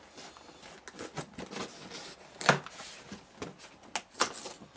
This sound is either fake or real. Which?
real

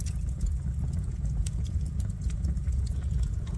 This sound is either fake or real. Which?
fake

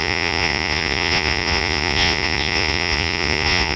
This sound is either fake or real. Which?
fake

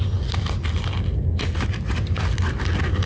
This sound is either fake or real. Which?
real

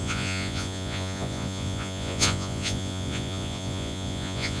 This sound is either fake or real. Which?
fake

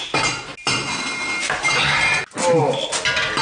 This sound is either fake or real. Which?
real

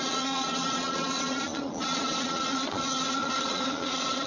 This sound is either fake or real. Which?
fake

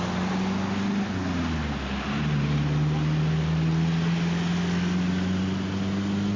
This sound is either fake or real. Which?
real